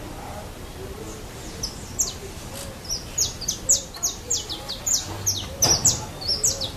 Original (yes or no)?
yes